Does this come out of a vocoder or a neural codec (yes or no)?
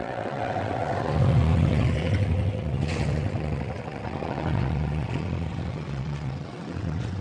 yes